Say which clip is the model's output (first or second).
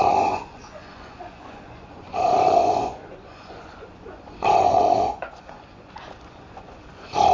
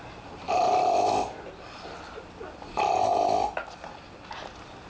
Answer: first